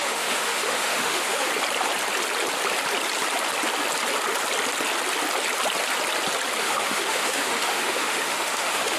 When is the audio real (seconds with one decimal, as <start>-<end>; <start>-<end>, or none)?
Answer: 1.5-6.6